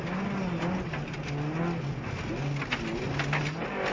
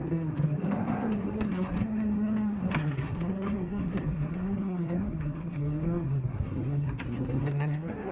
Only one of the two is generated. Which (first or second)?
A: second